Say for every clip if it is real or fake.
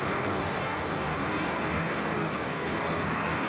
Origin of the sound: fake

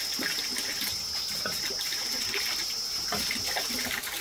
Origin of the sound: real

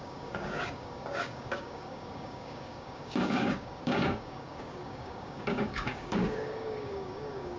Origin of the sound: fake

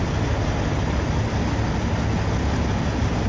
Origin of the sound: real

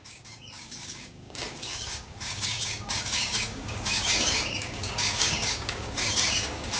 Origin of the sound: fake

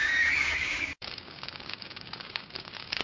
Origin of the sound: fake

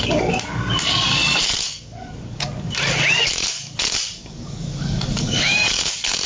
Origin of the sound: fake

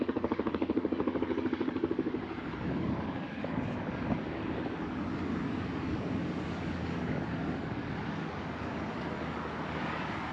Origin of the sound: fake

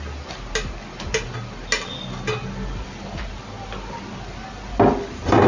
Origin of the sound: real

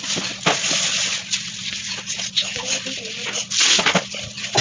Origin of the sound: real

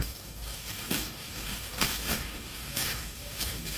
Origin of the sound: fake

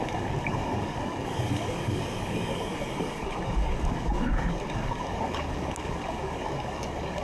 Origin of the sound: fake